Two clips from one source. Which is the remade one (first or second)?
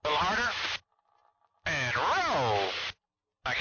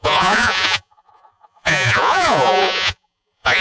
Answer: second